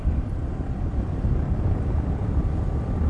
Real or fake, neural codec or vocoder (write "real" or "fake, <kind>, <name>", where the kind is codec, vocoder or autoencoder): fake, vocoder, BigVGAN v2